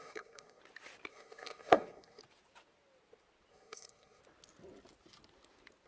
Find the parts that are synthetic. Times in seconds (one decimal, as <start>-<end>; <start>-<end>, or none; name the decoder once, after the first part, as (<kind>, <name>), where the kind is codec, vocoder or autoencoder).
0.0-0.6 (codec, SNAC); 1.1-2.2; 3.5-4.2